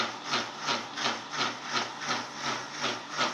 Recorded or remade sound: recorded